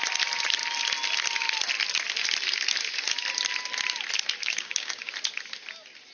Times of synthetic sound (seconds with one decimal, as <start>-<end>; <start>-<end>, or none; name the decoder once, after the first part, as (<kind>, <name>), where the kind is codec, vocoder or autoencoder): 4.4-5.1 (codec, DAC)